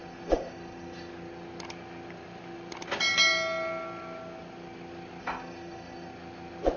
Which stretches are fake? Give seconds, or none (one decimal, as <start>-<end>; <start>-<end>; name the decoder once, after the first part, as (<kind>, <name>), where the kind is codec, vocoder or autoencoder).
0.0-1.1 (codec, DAC); 5.2-6.1